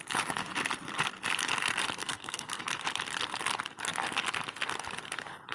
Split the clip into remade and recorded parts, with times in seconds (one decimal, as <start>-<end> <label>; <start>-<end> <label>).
0.0-2.0 recorded; 2.0-2.6 remade; 2.6-5.5 recorded